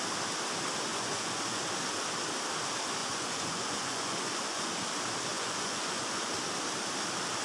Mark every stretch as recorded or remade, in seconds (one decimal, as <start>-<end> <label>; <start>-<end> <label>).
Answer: 0.0-0.9 recorded; 0.9-1.6 remade; 1.6-3.0 recorded; 3.0-4.7 remade; 4.7-5.3 recorded; 5.3-6.3 remade; 6.3-7.4 recorded